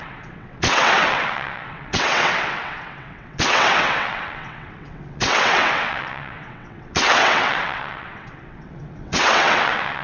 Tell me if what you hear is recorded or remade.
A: remade